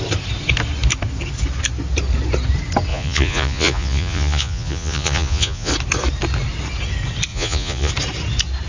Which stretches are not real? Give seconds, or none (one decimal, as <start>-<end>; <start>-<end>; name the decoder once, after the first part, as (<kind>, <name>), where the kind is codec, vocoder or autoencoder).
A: 2.9-5.7 (vocoder, Vocos); 7.3-7.9